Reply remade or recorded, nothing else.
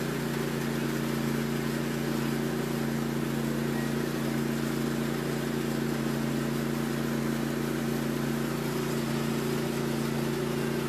recorded